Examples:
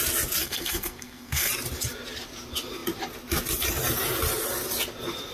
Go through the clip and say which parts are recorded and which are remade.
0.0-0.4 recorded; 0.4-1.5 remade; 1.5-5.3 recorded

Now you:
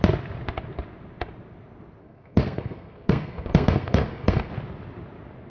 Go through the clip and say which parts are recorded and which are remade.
0.0-2.0 recorded; 2.0-4.5 remade; 4.5-5.5 recorded